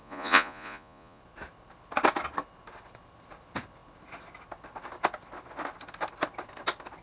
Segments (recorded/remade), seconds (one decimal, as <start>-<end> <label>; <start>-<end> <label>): 0.0-1.2 remade; 1.2-7.0 recorded